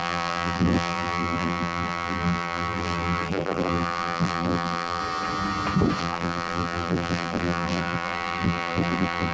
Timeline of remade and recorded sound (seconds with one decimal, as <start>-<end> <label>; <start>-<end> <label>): 0.0-5.0 remade; 5.0-6.0 recorded; 6.0-9.3 remade